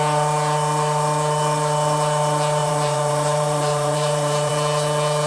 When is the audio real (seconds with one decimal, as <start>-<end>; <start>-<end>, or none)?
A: 0.0-2.6; 4.5-5.3